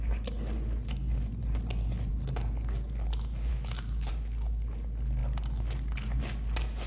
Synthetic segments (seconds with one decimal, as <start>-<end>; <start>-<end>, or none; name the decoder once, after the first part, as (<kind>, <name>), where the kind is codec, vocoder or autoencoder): 3.5-4.1 (autoencoder, DAC-VAE)